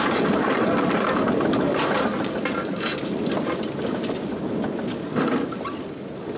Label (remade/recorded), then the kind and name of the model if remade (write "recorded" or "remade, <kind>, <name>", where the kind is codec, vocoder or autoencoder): recorded